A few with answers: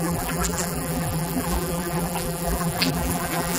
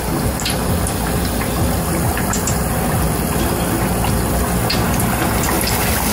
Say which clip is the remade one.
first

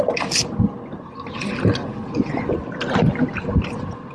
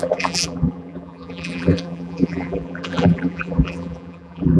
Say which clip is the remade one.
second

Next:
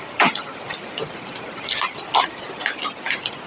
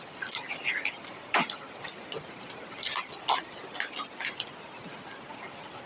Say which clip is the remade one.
first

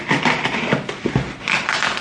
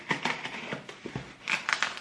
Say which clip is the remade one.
second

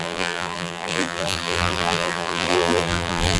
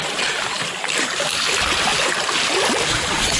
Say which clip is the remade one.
first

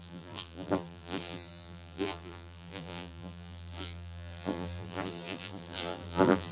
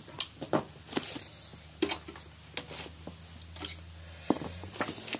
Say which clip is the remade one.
first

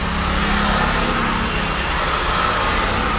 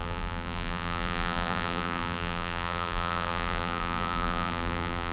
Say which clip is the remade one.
second